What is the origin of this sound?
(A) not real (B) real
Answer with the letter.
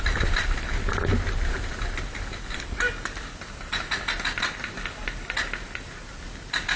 B